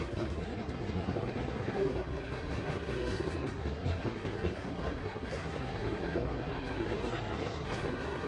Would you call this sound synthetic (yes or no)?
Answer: yes